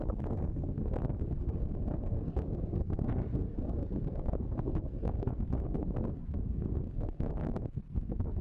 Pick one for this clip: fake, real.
fake